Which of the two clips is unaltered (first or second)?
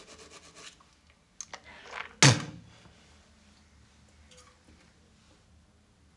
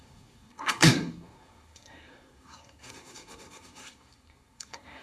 first